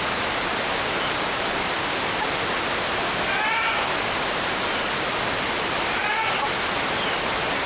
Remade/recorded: recorded